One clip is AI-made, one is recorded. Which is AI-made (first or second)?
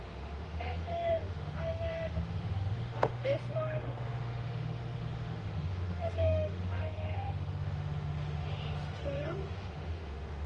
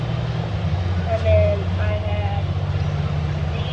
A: first